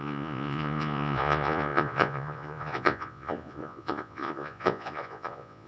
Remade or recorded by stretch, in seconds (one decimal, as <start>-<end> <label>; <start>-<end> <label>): 0.0-5.7 remade